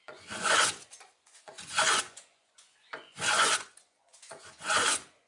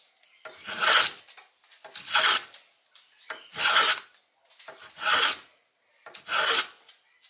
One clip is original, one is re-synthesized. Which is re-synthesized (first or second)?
first